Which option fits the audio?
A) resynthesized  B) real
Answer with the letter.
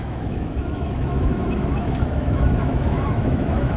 A